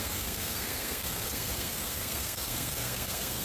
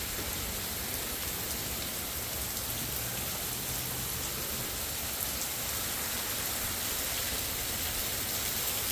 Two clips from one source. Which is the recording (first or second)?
second